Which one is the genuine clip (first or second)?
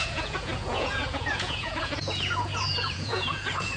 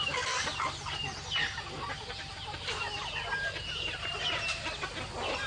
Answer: second